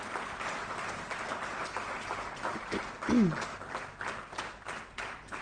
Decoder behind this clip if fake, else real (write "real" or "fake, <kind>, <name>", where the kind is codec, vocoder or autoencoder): real